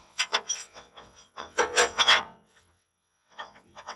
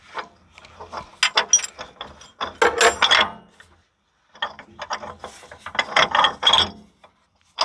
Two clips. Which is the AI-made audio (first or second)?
first